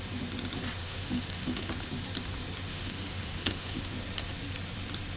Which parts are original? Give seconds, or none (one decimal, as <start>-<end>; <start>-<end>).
0.0-0.8; 1.7-2.7; 3.8-5.2